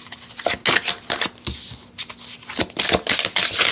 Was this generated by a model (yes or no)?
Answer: no